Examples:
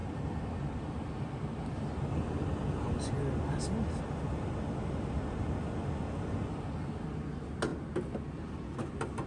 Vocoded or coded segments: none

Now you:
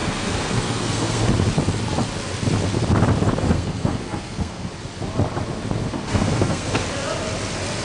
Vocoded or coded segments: 0.0-1.3 (codec, SNAC); 3.4-4.7; 5.8-6.8

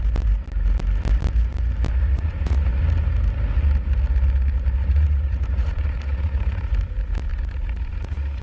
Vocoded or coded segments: 2.1-2.8 (vocoder, Vocos); 4.8-6.7; 7.3-8.4

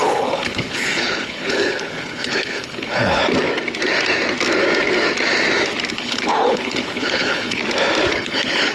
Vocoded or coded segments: 0.0-3.2 (codec, HILCodec); 5.9-7.6; 8.1-8.7

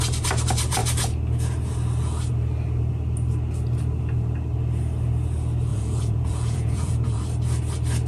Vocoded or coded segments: 5.7-7.2 (vocoder, Vocos)

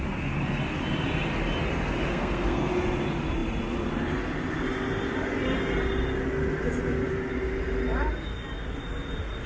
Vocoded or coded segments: 2.1-2.7 (codec, SNAC)

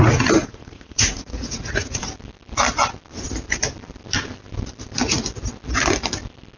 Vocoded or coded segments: 0.4-2.0 (vocoder, Vocos)